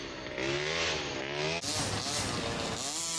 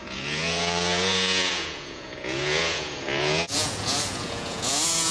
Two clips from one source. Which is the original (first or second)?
first